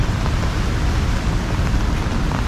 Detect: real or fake real